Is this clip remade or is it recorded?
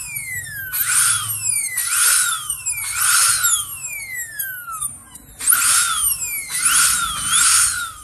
recorded